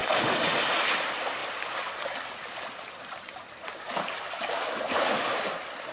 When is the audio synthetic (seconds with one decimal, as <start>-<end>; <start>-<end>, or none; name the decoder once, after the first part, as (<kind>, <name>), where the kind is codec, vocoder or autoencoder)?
0.0-0.8 (vocoder, Vocos)